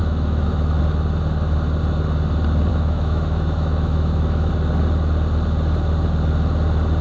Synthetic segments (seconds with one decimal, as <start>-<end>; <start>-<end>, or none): 0.0-0.8; 2.7-4.5